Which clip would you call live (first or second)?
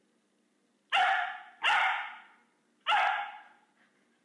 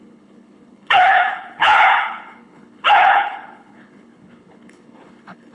first